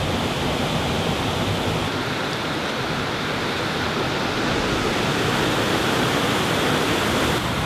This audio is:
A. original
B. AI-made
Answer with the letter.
A